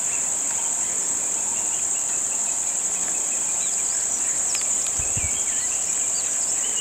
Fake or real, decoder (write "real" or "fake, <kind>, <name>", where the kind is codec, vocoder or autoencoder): real